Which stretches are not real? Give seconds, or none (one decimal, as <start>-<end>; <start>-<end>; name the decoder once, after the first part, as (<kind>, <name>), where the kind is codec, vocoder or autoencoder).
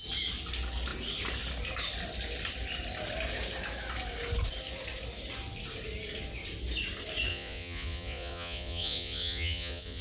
7.3-10.0 (vocoder, Vocos)